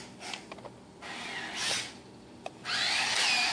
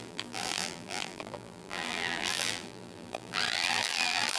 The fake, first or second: second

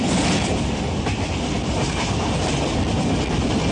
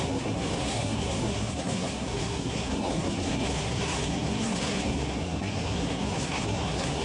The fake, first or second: second